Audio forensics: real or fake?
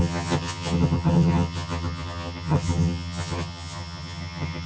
fake